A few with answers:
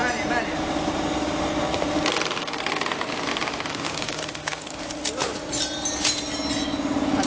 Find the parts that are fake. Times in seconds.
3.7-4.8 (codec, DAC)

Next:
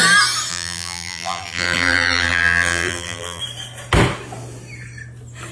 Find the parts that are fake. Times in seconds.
0.5-3.4 (vocoder, BigVGAN v2)

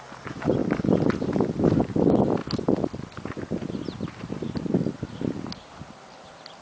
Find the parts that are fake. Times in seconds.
none

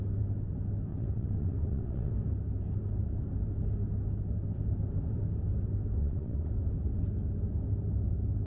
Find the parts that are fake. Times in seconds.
0.9-2.1 (vocoder, WaveNeXt); 6.0-6.5

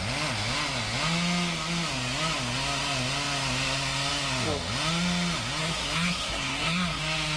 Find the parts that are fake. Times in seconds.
5.6-7.0 (codec, SNAC)

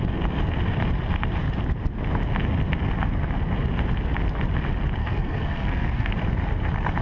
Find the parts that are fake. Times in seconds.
5.0-6.1 (codec, SNAC)